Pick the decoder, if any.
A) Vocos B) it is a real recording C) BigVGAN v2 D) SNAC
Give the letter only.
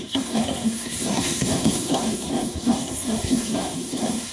D